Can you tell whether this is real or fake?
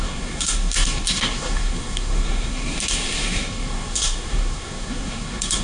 fake